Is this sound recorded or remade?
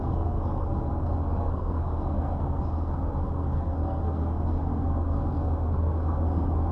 remade